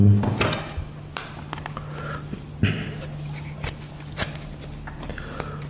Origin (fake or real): real